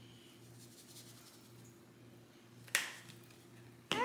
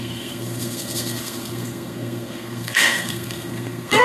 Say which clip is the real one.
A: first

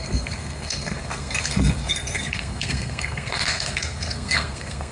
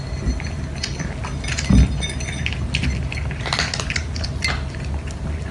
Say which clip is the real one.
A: second